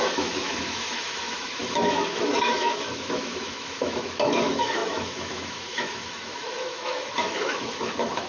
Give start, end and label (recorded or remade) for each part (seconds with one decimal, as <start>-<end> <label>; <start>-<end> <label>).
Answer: 0.0-8.3 remade